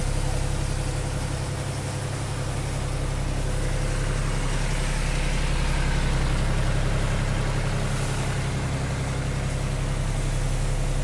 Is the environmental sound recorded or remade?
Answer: recorded